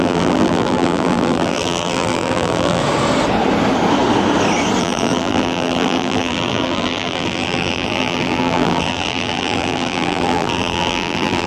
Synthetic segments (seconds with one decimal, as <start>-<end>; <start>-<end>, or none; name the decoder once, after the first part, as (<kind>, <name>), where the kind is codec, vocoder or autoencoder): 0.0-2.8 (vocoder, BigVGAN v2); 4.8-11.5